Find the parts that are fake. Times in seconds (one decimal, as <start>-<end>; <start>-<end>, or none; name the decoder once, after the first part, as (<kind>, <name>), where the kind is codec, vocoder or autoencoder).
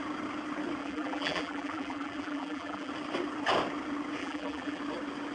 0.8-2.9 (vocoder, BigVGAN v2); 4.2-4.8